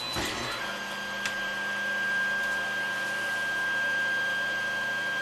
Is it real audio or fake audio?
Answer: real